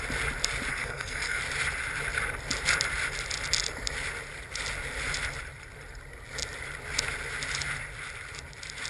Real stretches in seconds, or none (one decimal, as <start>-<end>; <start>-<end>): 0.0-0.7; 1.4-8.9